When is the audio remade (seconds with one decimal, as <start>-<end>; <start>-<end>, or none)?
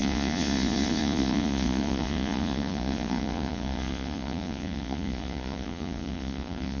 0.0-6.8